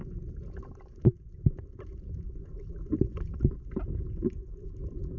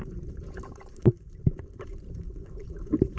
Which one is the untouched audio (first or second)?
first